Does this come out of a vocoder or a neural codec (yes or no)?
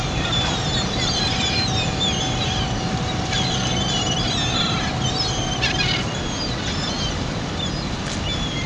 no